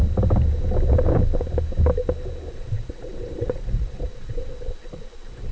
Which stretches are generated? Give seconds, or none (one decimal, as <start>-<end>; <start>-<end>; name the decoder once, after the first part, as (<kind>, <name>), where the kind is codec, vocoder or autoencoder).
2.5-5.5 (vocoder, Vocos)